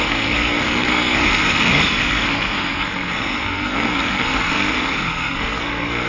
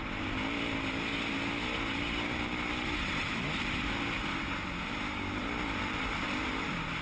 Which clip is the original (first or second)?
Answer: second